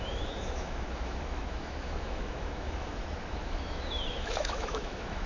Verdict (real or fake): fake